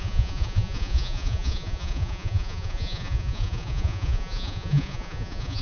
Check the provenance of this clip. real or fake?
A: fake